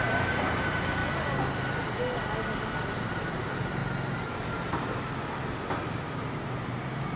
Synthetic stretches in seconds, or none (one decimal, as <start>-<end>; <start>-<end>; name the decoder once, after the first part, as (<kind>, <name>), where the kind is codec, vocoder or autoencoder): 0.0-1.0 (vocoder, BigVGAN v2); 3.1-3.8; 6.1-7.2